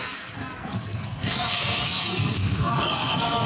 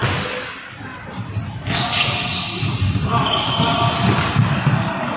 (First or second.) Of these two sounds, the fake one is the first